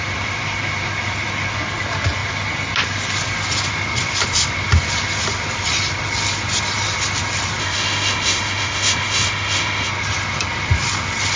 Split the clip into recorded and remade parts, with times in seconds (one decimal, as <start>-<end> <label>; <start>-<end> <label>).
0.0-7.6 recorded; 7.6-9.9 remade; 9.9-11.4 recorded